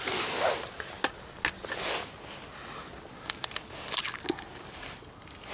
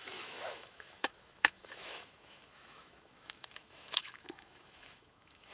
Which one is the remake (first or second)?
second